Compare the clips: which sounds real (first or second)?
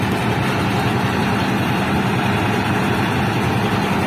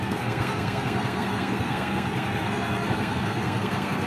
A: first